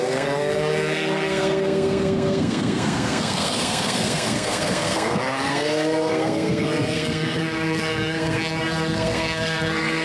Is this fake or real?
fake